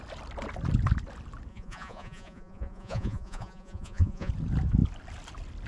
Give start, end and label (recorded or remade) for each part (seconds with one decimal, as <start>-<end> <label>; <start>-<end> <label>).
0.0-1.5 recorded; 1.5-4.3 remade; 4.3-5.7 recorded